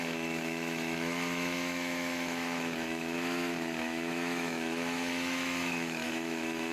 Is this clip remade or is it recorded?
remade